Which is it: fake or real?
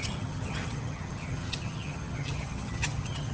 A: fake